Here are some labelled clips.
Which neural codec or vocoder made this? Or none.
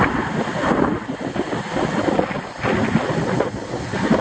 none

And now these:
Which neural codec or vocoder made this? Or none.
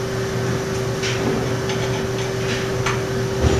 none